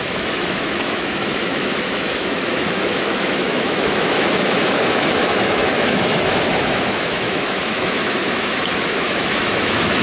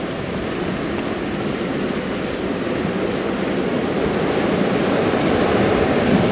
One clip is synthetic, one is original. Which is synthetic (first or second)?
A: first